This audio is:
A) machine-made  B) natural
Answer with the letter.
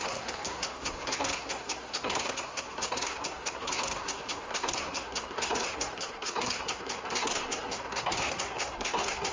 A